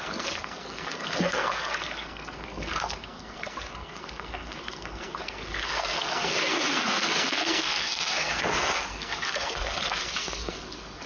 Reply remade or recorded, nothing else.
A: remade